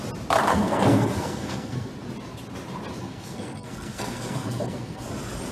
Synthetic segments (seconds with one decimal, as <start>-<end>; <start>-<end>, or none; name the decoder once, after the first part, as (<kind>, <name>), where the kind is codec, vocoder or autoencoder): 0.5-1.9 (codec, SNAC); 3.0-5.1